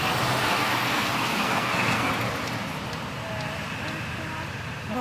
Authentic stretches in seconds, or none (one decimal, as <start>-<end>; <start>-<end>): 0.0-0.6; 2.1-5.0